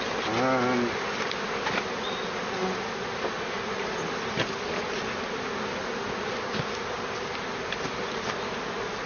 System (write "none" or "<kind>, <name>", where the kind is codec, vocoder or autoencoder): none